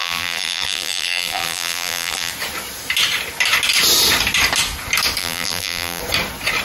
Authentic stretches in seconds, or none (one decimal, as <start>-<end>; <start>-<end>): 2.3-5.2; 6.0-6.6